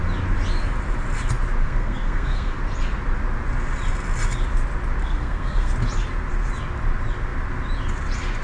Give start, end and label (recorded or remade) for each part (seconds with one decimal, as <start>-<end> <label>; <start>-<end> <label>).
0.0-1.6 recorded; 1.6-2.6 remade; 2.6-5.0 recorded; 5.0-5.7 remade; 5.7-8.4 recorded

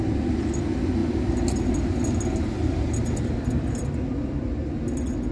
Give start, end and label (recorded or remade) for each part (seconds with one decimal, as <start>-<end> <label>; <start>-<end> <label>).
0.0-5.3 recorded

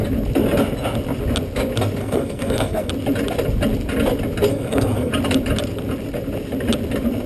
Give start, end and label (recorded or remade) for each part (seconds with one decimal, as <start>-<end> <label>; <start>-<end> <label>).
0.0-2.0 recorded; 2.0-2.9 remade; 2.9-4.5 recorded; 4.5-5.1 remade; 5.1-7.3 recorded

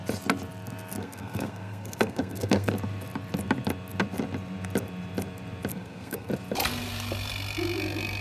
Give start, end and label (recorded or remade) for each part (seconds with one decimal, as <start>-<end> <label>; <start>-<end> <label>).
0.0-1.0 recorded; 1.0-2.7 remade; 2.7-5.7 recorded; 5.7-6.3 remade; 6.3-8.2 recorded

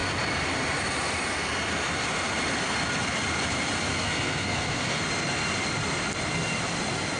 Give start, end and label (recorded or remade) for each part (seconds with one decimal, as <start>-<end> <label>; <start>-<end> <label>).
0.0-3.9 recorded; 3.9-5.0 remade; 5.0-7.2 recorded